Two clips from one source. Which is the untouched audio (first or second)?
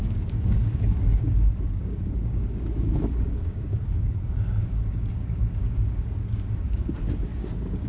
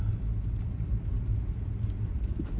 second